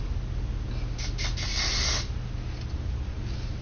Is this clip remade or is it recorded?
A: recorded